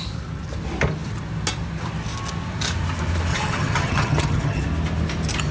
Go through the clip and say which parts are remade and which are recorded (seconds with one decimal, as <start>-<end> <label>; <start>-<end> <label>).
0.0-3.3 recorded; 3.3-4.6 remade; 4.6-5.5 recorded